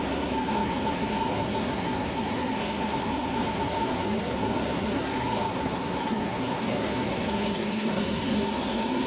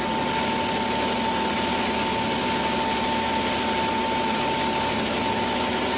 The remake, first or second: first